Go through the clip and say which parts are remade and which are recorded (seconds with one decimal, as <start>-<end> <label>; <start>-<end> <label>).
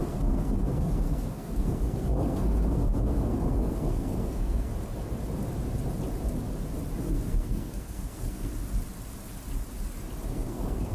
0.0-4.7 remade; 4.7-7.0 recorded; 7.0-8.5 remade; 8.5-10.3 recorded; 10.3-10.9 remade